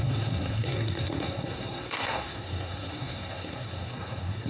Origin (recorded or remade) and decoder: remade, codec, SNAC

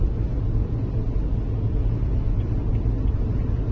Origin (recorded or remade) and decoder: recorded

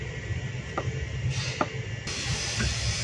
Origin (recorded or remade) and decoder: recorded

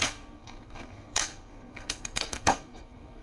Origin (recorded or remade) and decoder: remade, codec, SNAC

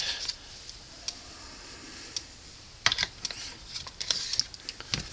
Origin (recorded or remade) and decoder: recorded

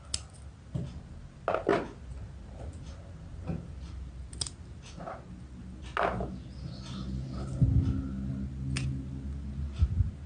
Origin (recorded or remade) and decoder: recorded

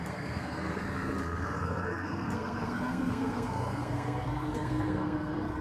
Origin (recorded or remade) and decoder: remade, codec, SNAC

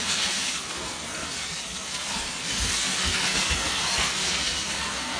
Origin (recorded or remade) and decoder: remade, codec, SNAC